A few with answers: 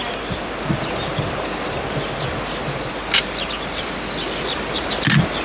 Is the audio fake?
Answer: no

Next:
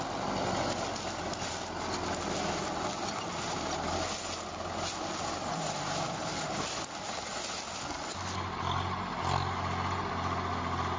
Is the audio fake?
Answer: no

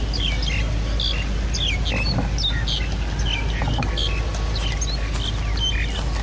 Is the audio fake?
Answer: no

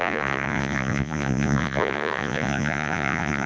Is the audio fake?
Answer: yes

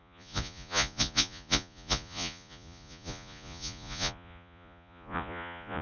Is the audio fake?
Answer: yes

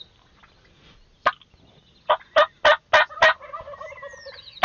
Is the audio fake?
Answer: no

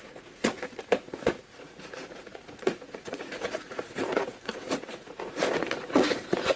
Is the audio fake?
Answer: yes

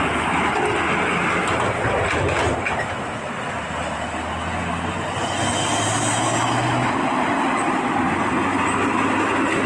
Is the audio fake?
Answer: no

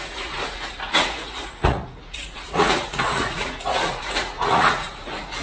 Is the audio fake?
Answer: yes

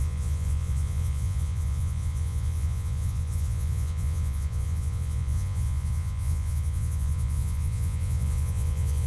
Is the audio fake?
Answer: yes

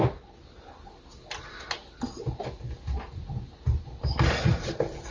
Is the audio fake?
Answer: no